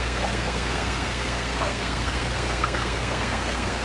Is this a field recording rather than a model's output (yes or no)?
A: no